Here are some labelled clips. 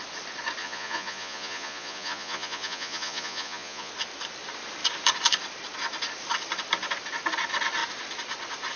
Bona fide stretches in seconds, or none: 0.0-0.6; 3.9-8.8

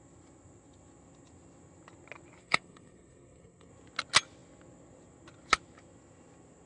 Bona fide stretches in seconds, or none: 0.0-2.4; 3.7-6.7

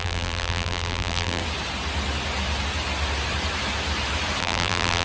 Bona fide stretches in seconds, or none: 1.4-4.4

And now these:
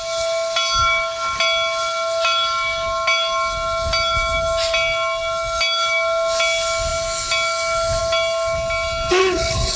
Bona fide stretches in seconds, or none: 0.0-9.2